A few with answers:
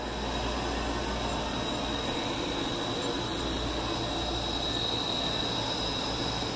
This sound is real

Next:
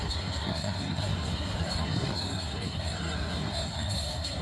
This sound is fake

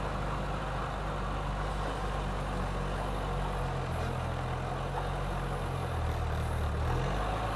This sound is real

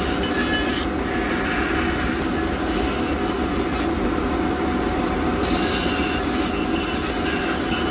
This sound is real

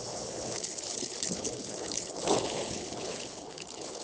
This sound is fake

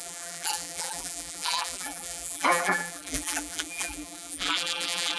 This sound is fake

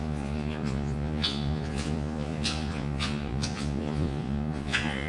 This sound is fake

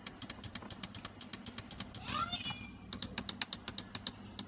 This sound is real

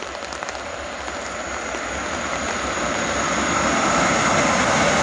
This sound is real